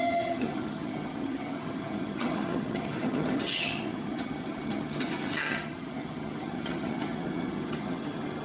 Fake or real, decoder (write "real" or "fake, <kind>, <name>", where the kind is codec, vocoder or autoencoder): fake, vocoder, HiFi-GAN